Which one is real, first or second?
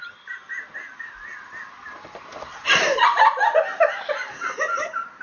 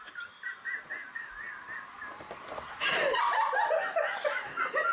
second